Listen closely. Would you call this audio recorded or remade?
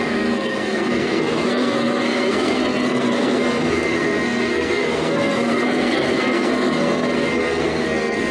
remade